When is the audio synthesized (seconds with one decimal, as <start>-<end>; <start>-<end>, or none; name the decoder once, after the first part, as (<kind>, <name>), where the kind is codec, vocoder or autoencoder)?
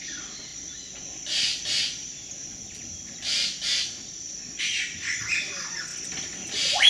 none